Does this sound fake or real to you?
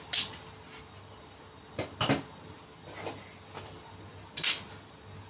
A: real